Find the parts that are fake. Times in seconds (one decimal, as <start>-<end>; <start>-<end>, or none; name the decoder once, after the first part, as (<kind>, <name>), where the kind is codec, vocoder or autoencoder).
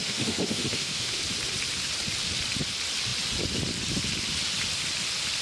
0.0-1.2 (autoencoder, DAC-VAE)